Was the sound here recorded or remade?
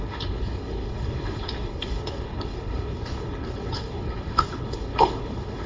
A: remade